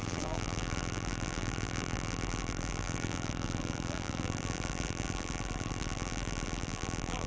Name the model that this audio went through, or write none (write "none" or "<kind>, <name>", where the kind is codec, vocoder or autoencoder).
vocoder, BigVGAN v2